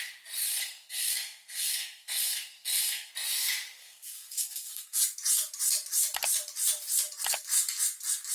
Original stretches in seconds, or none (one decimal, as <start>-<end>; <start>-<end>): 0.0-0.4; 3.1-3.8; 5.0-8.3